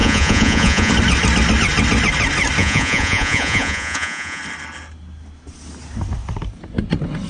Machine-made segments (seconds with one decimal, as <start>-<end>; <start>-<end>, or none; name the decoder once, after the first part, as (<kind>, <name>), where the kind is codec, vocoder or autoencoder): 0.0-0.9 (vocoder, Vocos); 2.6-4.4